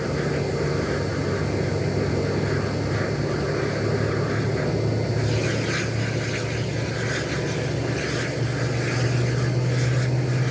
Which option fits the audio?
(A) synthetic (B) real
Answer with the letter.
B